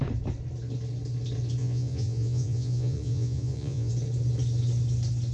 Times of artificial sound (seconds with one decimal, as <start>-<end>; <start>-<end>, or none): 1.6-3.9